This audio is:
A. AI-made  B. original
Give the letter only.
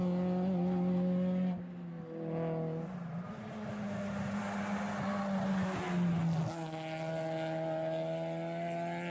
B